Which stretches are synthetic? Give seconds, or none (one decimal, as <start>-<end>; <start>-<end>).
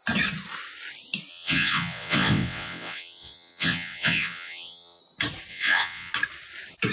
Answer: 1.3-5.0; 5.5-6.1